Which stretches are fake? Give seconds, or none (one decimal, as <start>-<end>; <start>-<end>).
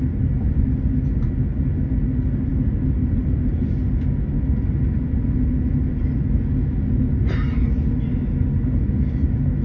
none